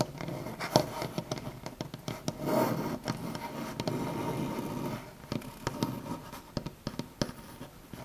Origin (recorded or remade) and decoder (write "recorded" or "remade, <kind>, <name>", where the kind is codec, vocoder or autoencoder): recorded